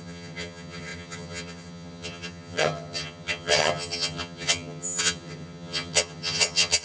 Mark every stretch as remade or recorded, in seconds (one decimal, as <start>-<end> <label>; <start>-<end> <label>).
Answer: 0.0-6.8 remade